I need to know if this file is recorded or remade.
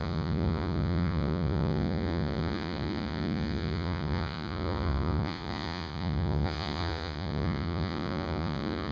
remade